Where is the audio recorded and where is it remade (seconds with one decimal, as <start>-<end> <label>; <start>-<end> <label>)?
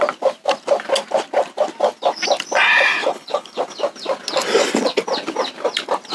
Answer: 0.0-3.0 recorded; 3.0-3.6 remade; 3.6-6.1 recorded